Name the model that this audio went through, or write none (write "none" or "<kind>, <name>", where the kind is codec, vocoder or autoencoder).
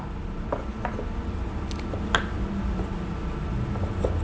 none